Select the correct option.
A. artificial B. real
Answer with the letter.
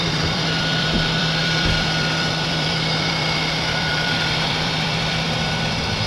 A